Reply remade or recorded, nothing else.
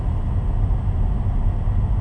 recorded